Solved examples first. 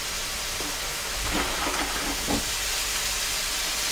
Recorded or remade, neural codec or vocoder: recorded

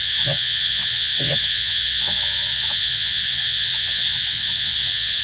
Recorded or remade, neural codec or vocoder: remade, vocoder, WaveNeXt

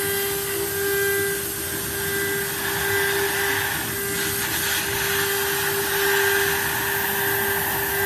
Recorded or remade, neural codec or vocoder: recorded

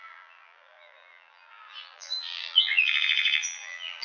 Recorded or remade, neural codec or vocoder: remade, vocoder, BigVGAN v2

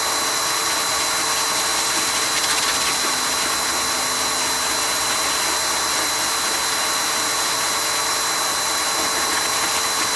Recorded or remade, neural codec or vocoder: recorded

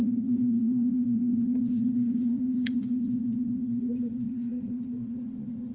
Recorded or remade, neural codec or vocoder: remade, vocoder, Vocos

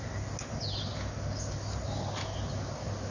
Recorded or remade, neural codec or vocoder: recorded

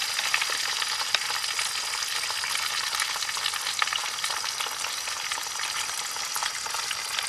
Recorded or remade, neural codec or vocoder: recorded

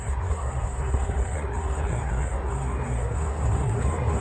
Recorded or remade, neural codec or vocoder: remade, codec, SNAC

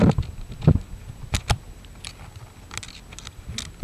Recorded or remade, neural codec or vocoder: recorded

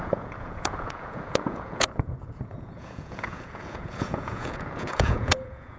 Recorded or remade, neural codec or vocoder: remade, vocoder, Vocos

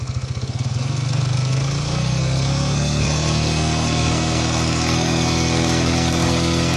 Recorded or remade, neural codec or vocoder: remade, codec, SNAC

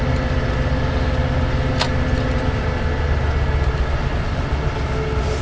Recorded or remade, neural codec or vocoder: recorded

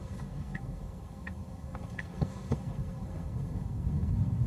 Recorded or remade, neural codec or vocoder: remade, codec, SNAC